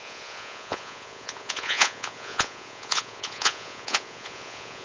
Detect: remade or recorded remade